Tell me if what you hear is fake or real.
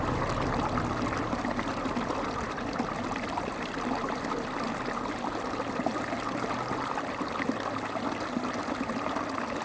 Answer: real